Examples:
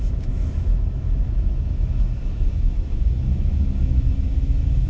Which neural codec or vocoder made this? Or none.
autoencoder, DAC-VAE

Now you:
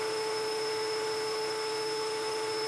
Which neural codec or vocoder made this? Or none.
autoencoder, DAC-VAE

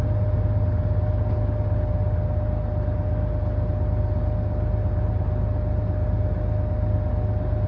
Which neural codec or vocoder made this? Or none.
none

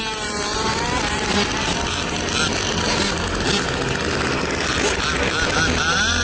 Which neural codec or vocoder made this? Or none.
none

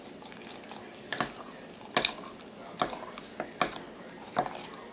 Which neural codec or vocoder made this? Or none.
none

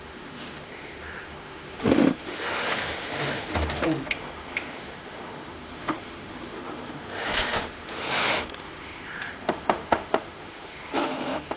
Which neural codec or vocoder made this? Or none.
autoencoder, DAC-VAE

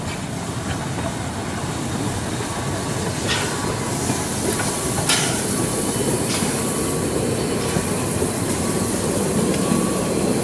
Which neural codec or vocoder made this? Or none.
none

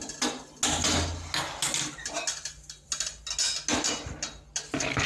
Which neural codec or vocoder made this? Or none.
none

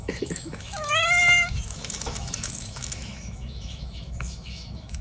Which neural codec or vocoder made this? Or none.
autoencoder, DAC-VAE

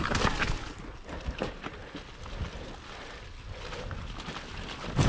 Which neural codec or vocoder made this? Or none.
none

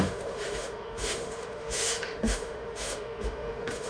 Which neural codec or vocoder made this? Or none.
autoencoder, DAC-VAE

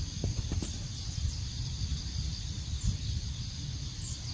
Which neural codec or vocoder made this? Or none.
none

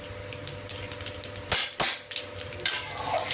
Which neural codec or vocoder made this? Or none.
none